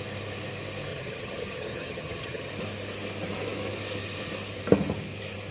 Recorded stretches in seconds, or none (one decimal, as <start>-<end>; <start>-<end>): 0.0-0.9; 2.5-5.5